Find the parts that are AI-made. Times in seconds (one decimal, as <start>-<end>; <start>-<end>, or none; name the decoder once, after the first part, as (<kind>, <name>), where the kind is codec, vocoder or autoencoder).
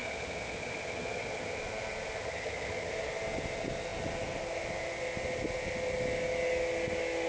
0.0-1.6 (vocoder, HiFi-GAN); 2.2-2.9